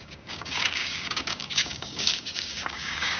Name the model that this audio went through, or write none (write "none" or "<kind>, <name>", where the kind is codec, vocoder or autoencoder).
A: codec, DAC